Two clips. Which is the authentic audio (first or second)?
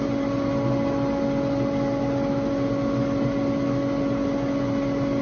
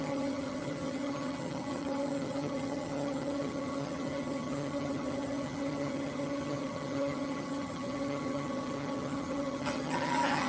first